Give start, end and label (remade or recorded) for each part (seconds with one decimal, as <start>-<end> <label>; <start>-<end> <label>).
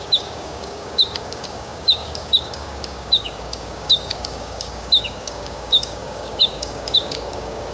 0.0-7.7 remade